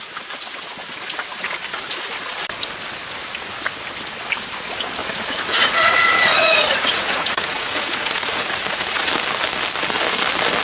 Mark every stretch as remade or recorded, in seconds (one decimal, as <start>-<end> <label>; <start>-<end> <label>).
0.0-5.0 recorded; 5.0-9.1 remade; 9.1-10.6 recorded